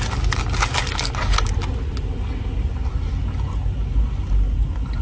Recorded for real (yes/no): yes